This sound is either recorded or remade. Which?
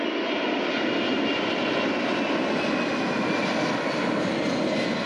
recorded